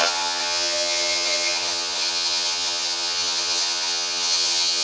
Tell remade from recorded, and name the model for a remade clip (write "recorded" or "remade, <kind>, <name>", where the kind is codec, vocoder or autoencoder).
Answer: remade, vocoder, HiFi-GAN